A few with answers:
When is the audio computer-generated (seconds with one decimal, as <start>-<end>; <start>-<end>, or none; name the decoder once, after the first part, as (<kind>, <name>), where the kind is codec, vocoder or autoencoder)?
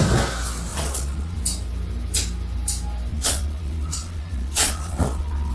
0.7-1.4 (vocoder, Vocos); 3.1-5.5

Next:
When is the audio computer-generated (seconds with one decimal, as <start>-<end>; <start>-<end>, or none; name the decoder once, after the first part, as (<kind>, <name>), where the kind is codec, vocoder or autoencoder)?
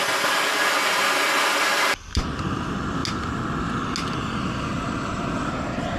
0.0-3.0 (vocoder, BigVGAN v2); 4.5-6.0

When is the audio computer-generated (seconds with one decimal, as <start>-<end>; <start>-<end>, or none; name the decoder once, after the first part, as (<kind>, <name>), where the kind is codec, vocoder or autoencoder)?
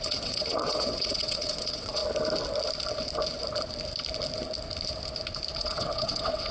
0.0-2.0 (vocoder, WaveNeXt); 5.6-6.5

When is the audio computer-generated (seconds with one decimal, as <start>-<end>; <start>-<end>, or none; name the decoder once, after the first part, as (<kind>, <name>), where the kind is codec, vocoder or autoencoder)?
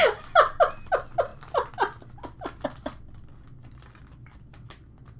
none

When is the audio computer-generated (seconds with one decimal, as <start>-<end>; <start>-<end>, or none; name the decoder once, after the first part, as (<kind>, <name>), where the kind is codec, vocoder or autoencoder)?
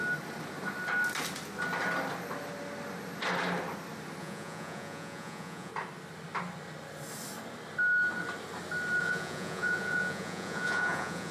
4.2-5.7 (vocoder, Vocos); 9.0-11.3